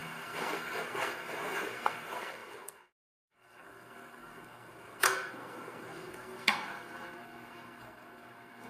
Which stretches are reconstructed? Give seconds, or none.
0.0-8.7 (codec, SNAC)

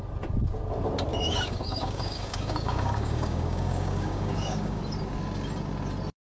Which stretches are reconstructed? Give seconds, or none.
1.1-4.8 (codec, DAC)